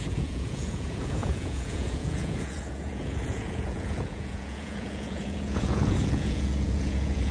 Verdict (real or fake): fake